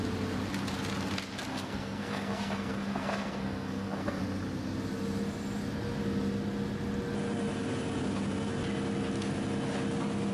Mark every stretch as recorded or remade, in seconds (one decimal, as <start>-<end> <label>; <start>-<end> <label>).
0.0-1.5 recorded; 1.5-4.2 remade; 4.2-10.3 recorded